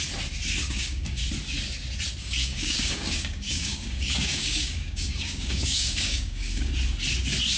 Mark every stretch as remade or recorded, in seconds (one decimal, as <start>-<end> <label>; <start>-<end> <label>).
0.0-0.6 recorded; 0.6-1.2 remade; 1.2-2.2 recorded; 2.2-6.7 remade; 6.7-7.6 recorded